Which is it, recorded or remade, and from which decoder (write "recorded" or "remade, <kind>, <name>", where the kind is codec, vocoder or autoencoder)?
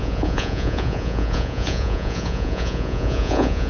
remade, vocoder, Vocos